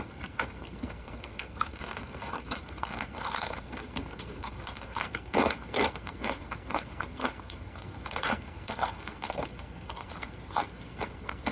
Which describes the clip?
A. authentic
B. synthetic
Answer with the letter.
B